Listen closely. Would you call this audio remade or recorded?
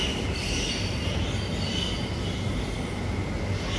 recorded